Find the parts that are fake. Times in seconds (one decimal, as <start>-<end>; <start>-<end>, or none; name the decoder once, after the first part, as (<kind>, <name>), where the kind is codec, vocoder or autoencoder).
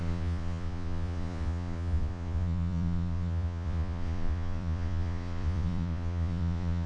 0.0-6.9 (vocoder, Vocos)